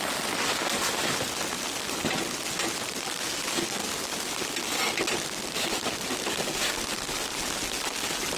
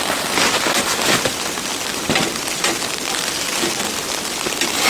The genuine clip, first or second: first